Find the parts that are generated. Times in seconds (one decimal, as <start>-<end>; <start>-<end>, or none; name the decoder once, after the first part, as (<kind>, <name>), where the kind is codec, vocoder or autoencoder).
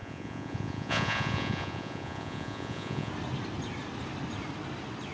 0.0-3.1 (vocoder, Vocos)